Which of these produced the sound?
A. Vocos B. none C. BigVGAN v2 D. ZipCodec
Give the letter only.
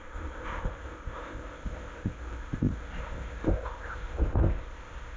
D